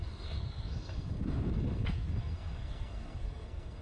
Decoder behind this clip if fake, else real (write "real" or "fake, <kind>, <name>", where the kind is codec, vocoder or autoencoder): fake, codec, SNAC